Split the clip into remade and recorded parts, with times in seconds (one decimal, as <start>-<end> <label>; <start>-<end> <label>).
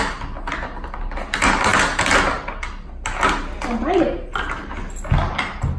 0.0-5.8 recorded